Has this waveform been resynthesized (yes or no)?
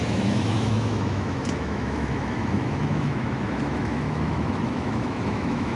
yes